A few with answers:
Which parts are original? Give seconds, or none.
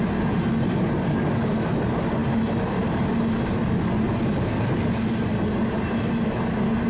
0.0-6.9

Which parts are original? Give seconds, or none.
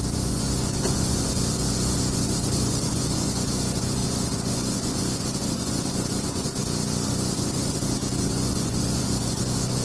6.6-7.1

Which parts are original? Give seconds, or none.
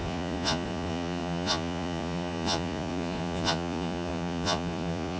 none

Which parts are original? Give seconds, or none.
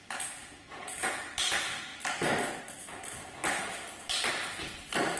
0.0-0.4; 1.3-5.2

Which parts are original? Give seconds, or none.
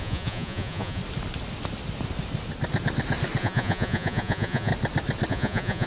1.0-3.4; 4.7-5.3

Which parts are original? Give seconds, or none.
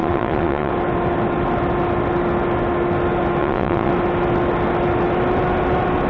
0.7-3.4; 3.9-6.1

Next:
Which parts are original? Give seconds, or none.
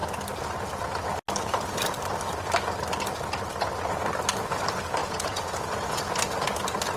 0.0-5.0; 6.0-7.0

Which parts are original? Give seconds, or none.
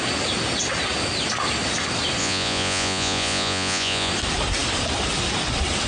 0.0-2.2; 4.1-5.9